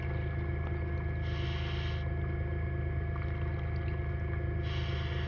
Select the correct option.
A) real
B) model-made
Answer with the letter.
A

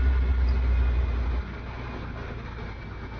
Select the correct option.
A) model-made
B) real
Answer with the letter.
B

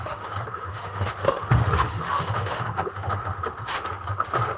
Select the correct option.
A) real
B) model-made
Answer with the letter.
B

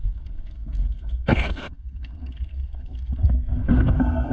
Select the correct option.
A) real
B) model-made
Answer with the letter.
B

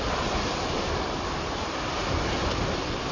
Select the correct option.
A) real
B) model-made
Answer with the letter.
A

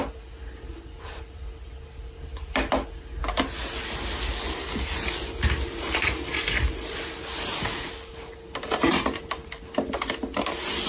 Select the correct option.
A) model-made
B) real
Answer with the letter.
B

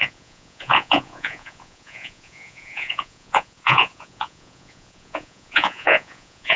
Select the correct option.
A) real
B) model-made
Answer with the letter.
B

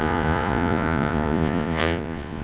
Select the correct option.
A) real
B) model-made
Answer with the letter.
B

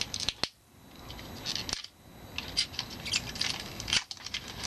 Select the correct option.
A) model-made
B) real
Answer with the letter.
B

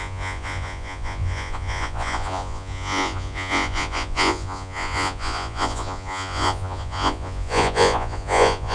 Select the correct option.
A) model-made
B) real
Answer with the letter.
A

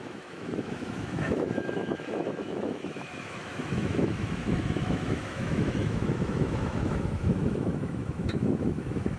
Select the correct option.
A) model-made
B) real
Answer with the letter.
A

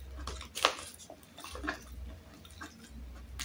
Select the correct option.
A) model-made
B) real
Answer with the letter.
B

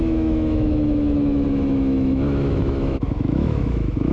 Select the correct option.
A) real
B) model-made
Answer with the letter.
B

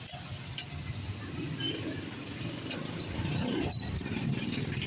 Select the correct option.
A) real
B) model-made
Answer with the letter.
B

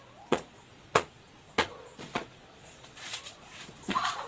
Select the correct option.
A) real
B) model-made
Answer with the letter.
B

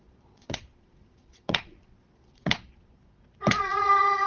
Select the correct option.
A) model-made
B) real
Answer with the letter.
A